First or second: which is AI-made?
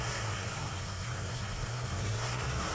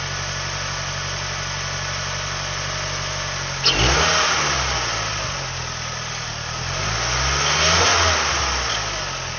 first